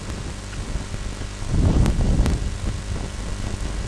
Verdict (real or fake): real